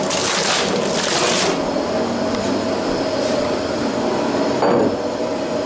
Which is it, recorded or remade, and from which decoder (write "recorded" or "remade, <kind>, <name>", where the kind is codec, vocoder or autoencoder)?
recorded